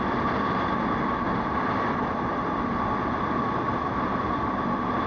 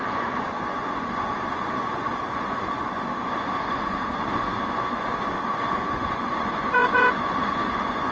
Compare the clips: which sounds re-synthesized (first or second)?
second